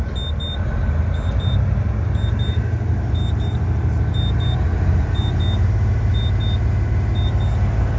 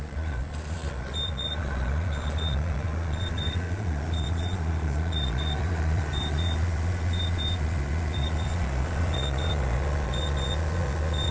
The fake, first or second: second